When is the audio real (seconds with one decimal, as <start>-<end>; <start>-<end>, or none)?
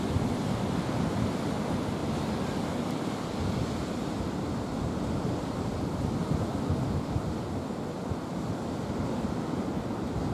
0.0-10.3